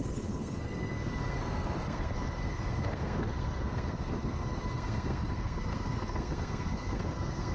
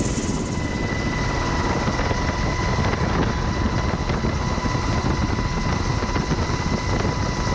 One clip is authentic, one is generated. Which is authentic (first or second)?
second